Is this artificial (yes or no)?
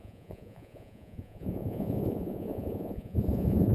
yes